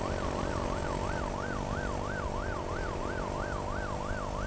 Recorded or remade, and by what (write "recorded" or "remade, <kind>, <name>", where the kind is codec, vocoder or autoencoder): recorded